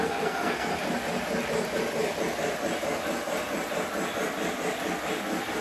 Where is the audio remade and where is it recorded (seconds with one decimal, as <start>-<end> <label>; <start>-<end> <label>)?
0.0-0.7 remade; 0.7-5.6 recorded